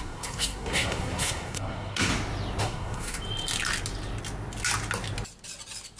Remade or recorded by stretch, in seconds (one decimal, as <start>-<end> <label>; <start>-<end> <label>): 0.0-2.1 remade; 2.1-2.6 recorded; 2.6-3.2 remade; 3.2-6.0 recorded